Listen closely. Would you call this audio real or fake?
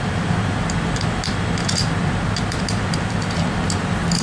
real